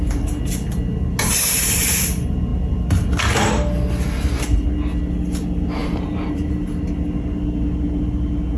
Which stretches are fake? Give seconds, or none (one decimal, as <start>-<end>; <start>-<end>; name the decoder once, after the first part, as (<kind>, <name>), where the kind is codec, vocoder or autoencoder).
5.8-6.7 (vocoder, BigVGAN v2)